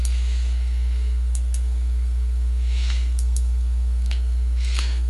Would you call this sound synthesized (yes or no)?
yes